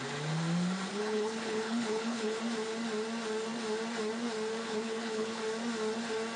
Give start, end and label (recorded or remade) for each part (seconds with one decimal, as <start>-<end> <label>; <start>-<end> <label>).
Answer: 0.0-0.9 recorded; 0.9-2.4 remade; 2.4-4.6 recorded; 4.6-5.4 remade; 5.4-6.4 recorded